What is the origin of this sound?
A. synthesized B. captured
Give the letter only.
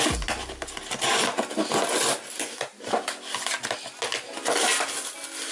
B